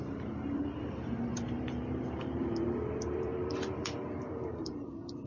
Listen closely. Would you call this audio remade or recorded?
remade